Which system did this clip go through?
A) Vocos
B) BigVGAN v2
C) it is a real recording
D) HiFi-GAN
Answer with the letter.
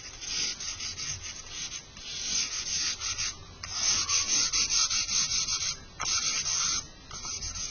C